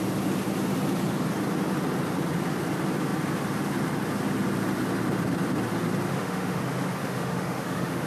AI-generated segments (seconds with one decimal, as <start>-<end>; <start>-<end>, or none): 6.1-6.6; 7.0-8.1